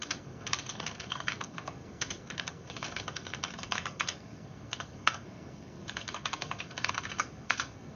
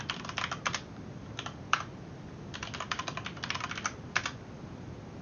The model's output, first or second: first